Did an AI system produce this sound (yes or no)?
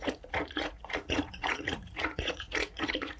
yes